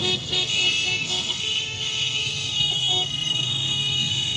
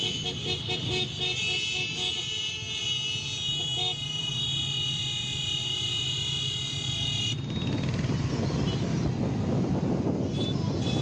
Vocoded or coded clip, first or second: first